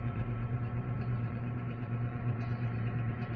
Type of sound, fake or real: fake